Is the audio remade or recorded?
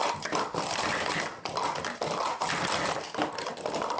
recorded